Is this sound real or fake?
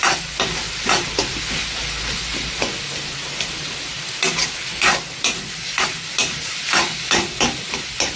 real